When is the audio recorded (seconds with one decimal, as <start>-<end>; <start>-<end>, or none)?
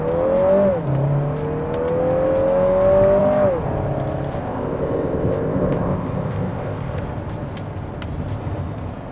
0.0-4.4; 7.0-9.1